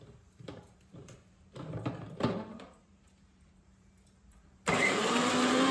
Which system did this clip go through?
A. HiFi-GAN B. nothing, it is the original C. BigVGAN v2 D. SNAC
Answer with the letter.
C